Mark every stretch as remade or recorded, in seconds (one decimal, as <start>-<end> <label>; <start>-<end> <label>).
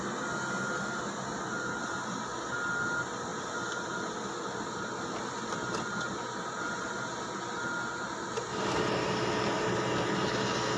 0.0-10.8 recorded